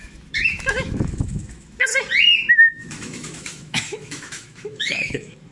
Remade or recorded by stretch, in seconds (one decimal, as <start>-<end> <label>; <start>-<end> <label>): 0.0-1.9 remade; 1.9-2.5 recorded; 2.5-5.5 remade